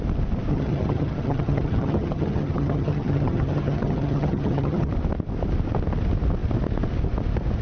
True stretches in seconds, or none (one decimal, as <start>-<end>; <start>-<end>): 0.0-0.5; 4.9-7.6